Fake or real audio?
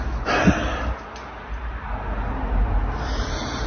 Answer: real